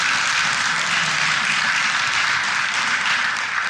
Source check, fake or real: real